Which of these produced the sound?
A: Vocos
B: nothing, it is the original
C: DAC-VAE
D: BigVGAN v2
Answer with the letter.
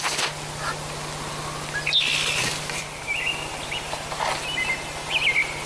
B